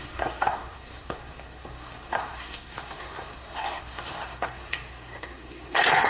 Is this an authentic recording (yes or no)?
no